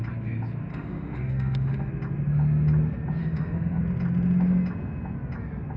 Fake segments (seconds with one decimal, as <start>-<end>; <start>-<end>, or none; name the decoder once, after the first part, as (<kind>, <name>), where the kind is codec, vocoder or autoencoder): 0.7-1.9 (autoencoder, DAC-VAE); 3.2-3.8